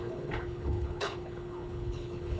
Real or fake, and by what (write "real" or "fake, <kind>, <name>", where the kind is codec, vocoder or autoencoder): fake, codec, HILCodec